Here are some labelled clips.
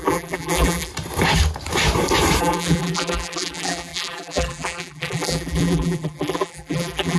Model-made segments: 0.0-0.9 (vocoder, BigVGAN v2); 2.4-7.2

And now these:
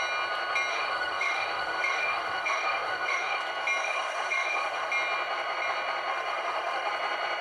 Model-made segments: 0.7-3.4 (autoencoder, DAC-VAE); 3.8-4.9; 6.1-6.9

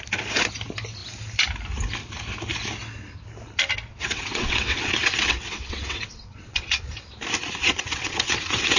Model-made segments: 3.9-6.7 (vocoder, WaveNeXt); 7.6-8.8

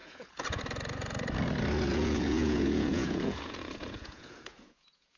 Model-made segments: 0.0-0.6 (vocoder, Vocos); 1.9-5.2

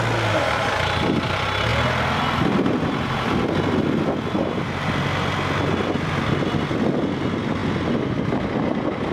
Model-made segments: none

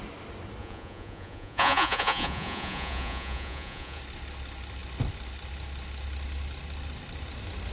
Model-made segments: 0.6-4.0 (vocoder, Vocos)

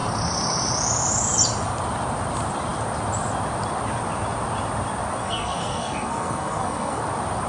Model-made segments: 5.2-7.0 (codec, SNAC)

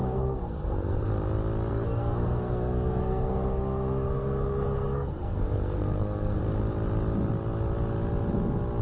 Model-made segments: 0.0-1.1 (codec, SNAC); 1.7-6.4